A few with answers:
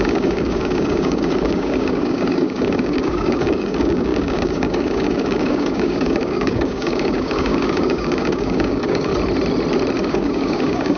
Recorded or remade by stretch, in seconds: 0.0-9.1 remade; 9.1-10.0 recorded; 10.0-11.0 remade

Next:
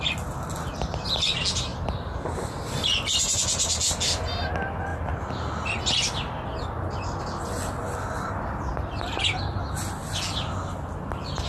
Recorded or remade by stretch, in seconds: 0.0-11.5 recorded

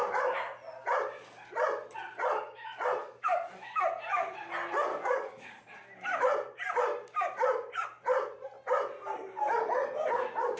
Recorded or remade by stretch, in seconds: 0.0-3.0 recorded; 3.0-3.8 remade; 3.8-4.9 recorded; 4.9-5.6 remade; 5.6-10.6 recorded

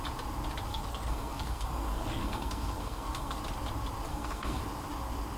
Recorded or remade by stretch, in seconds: 0.0-0.7 recorded; 0.7-3.4 remade; 3.4-4.1 recorded; 4.1-4.6 remade; 4.6-5.4 recorded

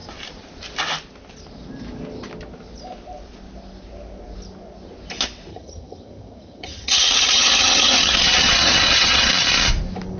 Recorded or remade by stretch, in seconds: 0.0-5.5 recorded; 5.5-9.3 remade; 9.3-10.2 recorded